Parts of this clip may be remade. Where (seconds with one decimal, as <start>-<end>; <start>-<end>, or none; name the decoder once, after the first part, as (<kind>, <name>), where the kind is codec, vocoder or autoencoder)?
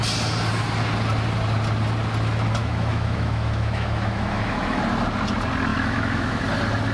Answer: 2.6-4.8 (autoencoder, DAC-VAE); 5.7-6.4